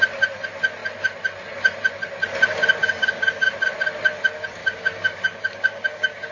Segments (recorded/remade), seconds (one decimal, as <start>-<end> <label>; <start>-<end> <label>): 0.0-2.8 recorded; 2.8-3.5 remade; 3.5-4.6 recorded; 4.6-6.3 remade